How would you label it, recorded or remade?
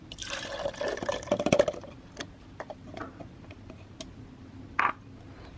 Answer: recorded